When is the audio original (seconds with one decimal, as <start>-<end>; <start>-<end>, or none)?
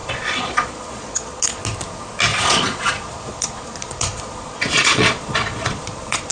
1.6-2.3